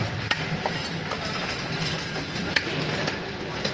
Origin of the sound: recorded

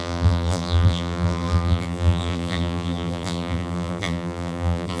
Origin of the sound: remade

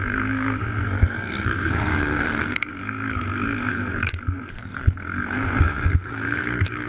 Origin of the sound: remade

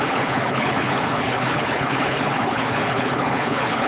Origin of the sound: remade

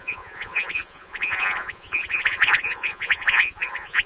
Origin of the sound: remade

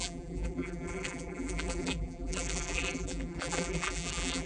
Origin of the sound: remade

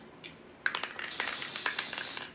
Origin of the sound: recorded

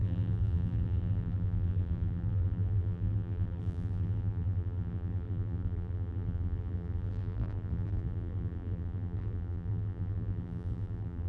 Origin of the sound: remade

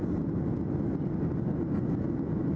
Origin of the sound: recorded